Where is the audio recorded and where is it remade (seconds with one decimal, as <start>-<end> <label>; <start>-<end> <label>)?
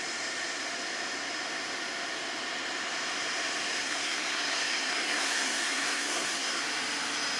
0.0-3.8 recorded; 3.8-6.6 remade; 6.6-7.4 recorded